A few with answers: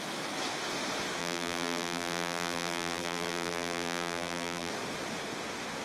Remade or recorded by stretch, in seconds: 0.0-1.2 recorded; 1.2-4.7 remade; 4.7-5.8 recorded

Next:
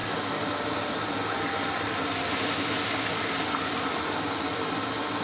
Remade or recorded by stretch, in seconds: 0.0-5.2 recorded